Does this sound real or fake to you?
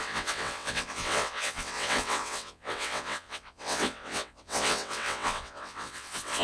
fake